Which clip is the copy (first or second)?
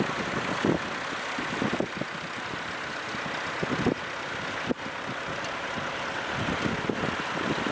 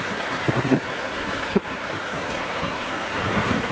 second